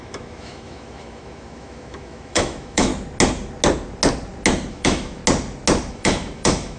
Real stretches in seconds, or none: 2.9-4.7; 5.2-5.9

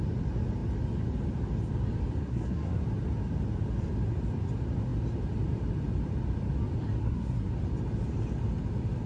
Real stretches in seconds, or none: 0.0-2.2; 2.8-7.0; 7.5-9.1

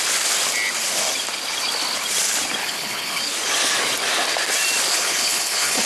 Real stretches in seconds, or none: 0.0-2.6; 3.2-4.9

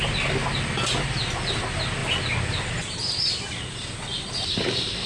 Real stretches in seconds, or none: 0.0-5.1

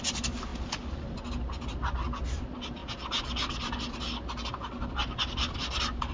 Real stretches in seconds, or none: 0.0-6.1

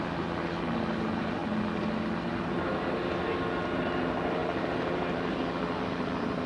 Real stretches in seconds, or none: 0.0-6.5

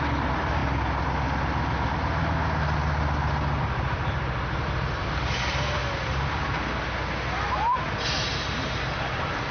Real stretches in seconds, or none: 0.6-3.6; 5.8-8.8